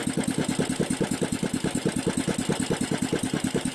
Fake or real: real